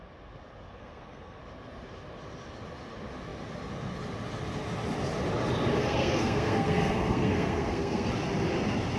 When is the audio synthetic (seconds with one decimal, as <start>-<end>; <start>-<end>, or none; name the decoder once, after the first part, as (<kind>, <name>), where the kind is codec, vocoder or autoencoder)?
0.8-1.4 (codec, SNAC); 5.8-8.1